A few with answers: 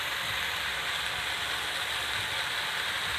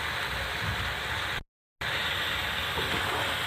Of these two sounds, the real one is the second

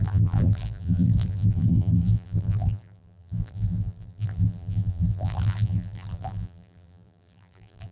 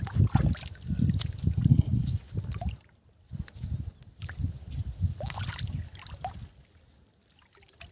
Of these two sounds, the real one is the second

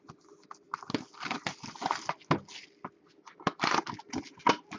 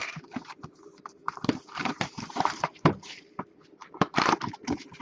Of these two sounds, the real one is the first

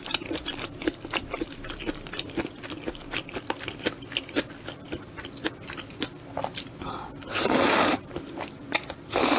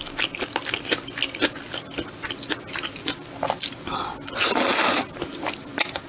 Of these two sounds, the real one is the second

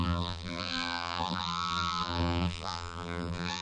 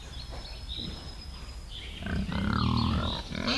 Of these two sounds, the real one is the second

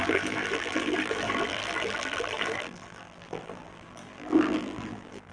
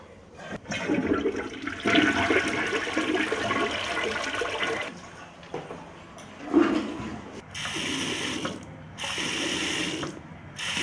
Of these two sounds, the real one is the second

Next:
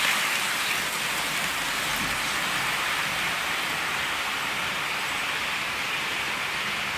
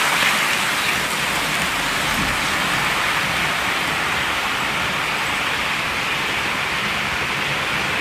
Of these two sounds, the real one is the first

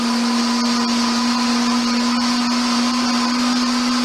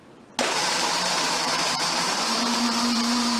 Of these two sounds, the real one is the first